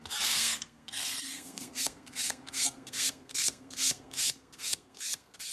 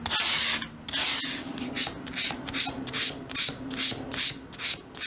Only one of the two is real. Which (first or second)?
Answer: second